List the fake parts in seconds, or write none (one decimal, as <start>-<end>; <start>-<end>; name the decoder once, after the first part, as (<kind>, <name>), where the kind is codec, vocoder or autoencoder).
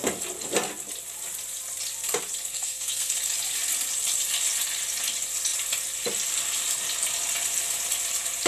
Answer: 2.5-3.1 (codec, SNAC)